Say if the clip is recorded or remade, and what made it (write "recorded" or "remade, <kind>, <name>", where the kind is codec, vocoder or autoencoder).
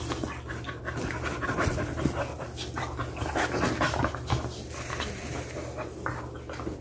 recorded